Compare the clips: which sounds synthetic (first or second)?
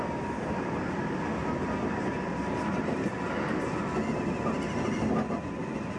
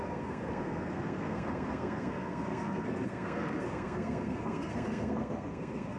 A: second